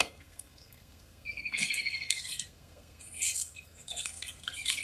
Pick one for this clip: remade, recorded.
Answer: remade